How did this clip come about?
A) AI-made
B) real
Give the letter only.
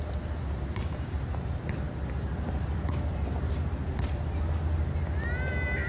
B